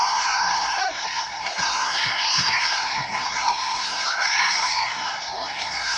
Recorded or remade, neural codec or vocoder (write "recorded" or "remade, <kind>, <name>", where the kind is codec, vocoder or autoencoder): remade, codec, SNAC